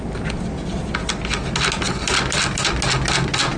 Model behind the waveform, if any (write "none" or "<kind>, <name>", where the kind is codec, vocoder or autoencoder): none